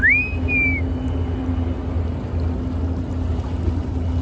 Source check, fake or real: real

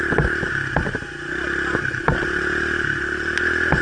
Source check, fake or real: real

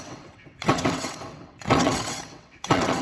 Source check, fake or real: fake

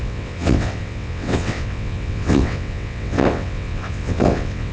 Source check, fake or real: fake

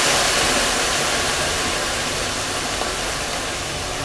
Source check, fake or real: real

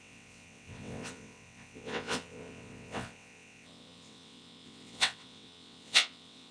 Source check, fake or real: fake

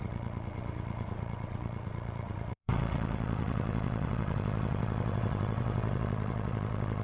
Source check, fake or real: fake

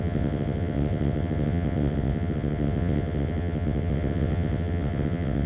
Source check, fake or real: fake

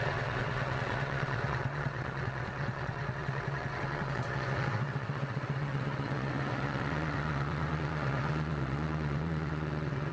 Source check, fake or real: fake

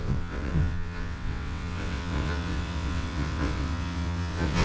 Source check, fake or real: fake